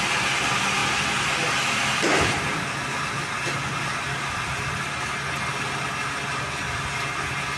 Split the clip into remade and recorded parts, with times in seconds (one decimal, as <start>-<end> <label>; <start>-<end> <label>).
0.0-7.6 recorded